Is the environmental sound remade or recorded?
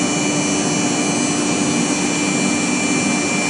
recorded